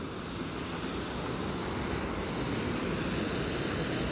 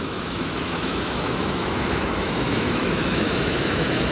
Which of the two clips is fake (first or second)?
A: second